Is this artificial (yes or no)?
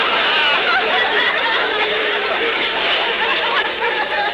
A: yes